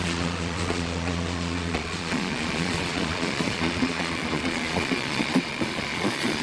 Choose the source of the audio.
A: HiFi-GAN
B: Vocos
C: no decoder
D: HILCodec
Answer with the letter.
B